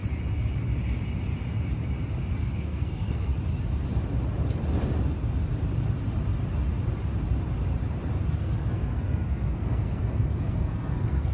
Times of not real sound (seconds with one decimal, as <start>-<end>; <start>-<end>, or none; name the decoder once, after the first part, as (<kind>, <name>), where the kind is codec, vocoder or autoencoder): 2.4-3.3 (codec, SNAC); 8.3-11.3